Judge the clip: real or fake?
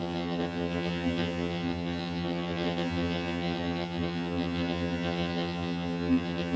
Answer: fake